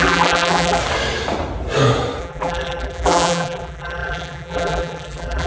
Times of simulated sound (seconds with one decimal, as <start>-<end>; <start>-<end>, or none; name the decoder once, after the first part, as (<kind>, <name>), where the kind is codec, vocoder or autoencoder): 0.0-0.8 (vocoder, BigVGAN v2); 2.2-5.5